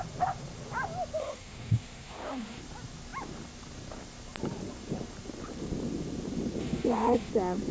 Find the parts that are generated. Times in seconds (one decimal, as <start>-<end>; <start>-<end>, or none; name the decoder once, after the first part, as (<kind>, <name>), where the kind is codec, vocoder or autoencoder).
1.2-2.6 (codec, SNAC); 6.6-7.3